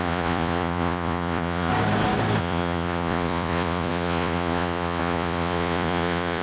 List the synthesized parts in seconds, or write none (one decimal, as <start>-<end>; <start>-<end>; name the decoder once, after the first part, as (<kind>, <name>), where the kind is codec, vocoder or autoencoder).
0.0-1.7 (vocoder, Vocos); 2.4-6.4

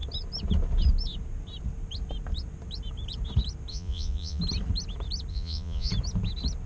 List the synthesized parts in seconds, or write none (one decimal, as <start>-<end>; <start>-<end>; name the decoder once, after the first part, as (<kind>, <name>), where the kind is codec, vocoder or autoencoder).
3.7-4.4 (vocoder, Vocos); 5.3-5.9

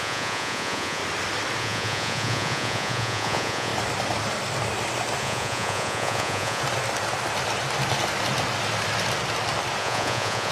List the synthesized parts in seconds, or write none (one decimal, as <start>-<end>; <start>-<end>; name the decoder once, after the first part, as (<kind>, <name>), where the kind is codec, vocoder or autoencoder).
0.0-1.0 (vocoder, Vocos); 1.6-3.7; 5.2-6.6; 9.8-10.5